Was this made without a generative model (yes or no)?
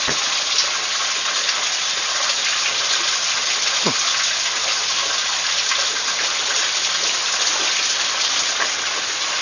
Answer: yes